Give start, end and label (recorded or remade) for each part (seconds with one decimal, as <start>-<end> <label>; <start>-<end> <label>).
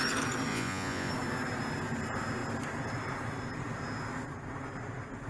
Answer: 0.0-0.5 recorded; 0.5-1.1 remade; 1.1-5.3 recorded